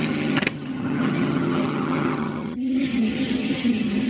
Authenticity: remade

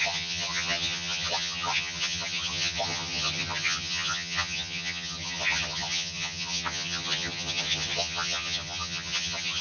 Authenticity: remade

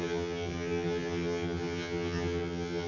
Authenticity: remade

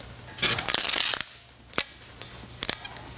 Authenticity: recorded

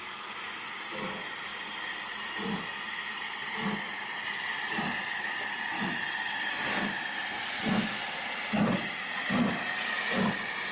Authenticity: recorded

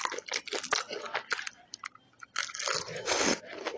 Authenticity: recorded